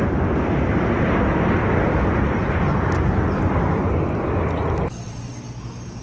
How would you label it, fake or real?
real